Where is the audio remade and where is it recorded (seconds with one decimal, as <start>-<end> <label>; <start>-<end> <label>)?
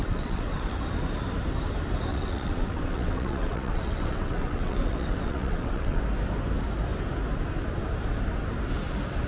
0.0-0.8 remade; 0.8-2.1 recorded; 2.1-6.0 remade; 6.0-9.3 recorded